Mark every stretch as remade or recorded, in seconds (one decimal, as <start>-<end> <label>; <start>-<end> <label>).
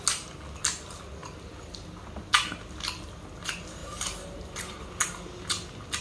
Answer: 0.0-3.8 recorded; 3.8-4.9 remade; 4.9-6.0 recorded